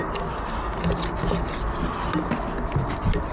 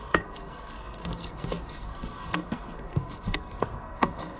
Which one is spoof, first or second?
second